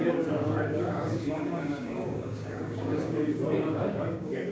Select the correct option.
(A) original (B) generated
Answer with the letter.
B